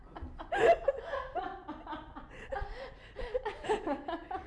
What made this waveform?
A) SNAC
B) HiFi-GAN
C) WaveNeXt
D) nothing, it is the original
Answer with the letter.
D